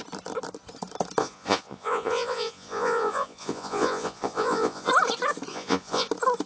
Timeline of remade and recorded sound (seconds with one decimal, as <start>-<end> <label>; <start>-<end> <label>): 0.0-1.2 recorded; 1.2-4.9 remade; 4.9-5.5 recorded; 5.5-6.1 remade; 6.1-6.5 recorded